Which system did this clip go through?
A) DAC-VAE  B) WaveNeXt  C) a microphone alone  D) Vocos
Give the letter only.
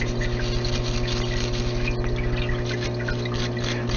C